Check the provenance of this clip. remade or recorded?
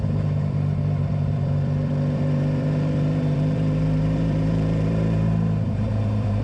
remade